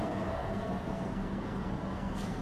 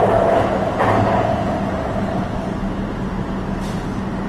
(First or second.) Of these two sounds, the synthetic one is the first